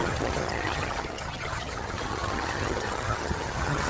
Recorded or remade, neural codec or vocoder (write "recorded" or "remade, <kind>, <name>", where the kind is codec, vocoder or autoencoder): remade, vocoder, HiFi-GAN